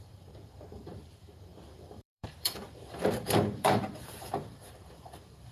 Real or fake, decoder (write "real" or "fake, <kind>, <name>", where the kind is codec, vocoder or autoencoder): fake, vocoder, BigVGAN v2